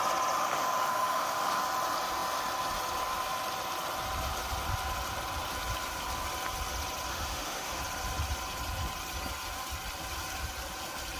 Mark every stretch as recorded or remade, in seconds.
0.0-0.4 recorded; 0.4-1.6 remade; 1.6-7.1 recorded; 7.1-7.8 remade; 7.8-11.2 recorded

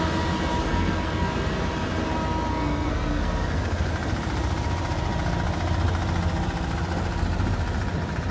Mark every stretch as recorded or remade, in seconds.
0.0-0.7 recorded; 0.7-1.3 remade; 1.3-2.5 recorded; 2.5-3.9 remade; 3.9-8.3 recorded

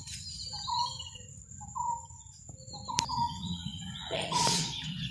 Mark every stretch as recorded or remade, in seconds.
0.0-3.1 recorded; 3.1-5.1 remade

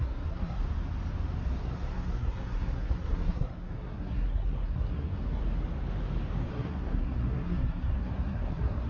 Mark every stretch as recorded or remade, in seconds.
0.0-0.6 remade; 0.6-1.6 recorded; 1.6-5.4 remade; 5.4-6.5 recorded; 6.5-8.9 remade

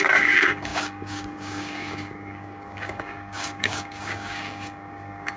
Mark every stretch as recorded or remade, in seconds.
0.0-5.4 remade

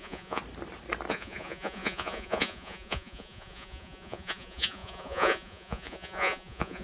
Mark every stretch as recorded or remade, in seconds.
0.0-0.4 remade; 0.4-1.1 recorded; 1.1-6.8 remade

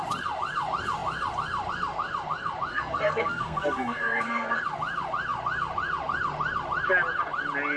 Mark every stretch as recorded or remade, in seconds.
0.0-2.7 recorded; 2.7-4.6 remade; 4.6-7.8 recorded

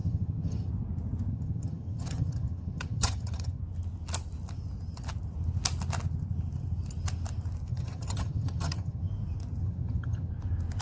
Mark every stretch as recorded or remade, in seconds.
0.0-0.7 remade; 0.7-1.3 recorded; 1.3-3.6 remade; 3.6-7.7 recorded; 7.7-9.1 remade; 9.1-9.6 recorded; 9.6-10.3 remade; 10.3-10.8 recorded